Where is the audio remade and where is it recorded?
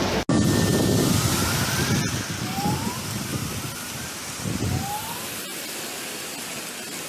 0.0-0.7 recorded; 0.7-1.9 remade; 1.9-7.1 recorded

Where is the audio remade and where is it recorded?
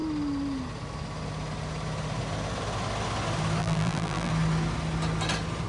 0.0-3.6 recorded; 3.6-4.3 remade; 4.3-5.7 recorded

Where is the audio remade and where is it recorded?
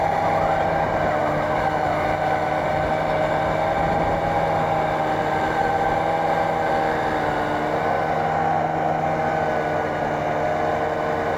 0.0-11.4 recorded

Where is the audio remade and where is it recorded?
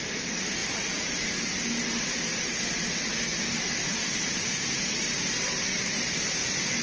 0.0-0.6 recorded; 0.6-1.3 remade; 1.3-4.1 recorded; 4.1-6.8 remade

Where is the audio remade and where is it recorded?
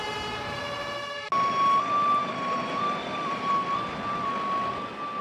0.0-2.2 recorded; 2.2-3.5 remade; 3.5-5.2 recorded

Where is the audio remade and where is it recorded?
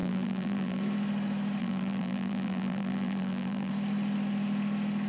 0.0-0.8 remade; 0.8-1.6 recorded; 1.6-3.7 remade; 3.7-5.1 recorded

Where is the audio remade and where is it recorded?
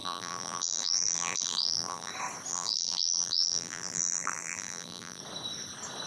0.0-2.1 remade; 2.1-2.5 recorded; 2.5-5.2 remade; 5.2-6.1 recorded